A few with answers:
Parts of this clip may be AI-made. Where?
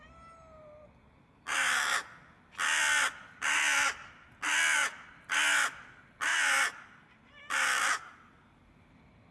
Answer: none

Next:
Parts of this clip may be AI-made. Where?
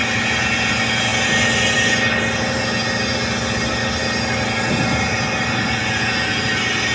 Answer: none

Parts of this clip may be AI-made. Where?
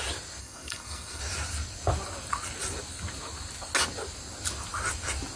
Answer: 0.4-1.2 (codec, SNAC)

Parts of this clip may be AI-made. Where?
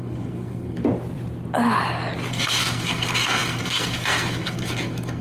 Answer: 0.0-0.8 (codec, SNAC); 2.3-5.2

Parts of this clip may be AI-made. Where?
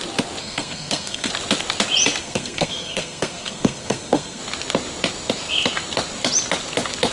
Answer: 0.4-1.3 (codec, SNAC); 2.2-4.4